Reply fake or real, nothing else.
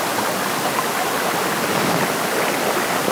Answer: real